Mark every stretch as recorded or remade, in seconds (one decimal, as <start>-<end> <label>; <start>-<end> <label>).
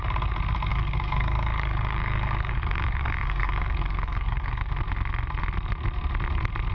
0.0-0.7 recorded; 0.7-4.7 remade; 4.7-6.7 recorded